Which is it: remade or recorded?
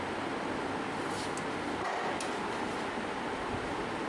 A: recorded